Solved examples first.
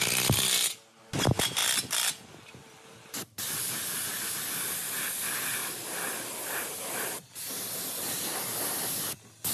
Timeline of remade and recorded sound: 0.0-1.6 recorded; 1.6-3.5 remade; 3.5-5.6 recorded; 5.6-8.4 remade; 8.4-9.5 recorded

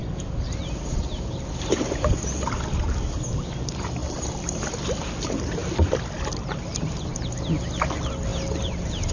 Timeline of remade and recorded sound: 0.0-2.5 remade; 2.5-4.0 recorded; 4.0-5.0 remade; 5.0-9.1 recorded